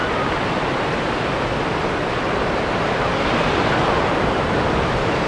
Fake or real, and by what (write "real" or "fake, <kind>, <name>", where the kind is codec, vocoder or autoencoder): real